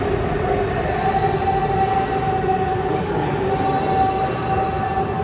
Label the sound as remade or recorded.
recorded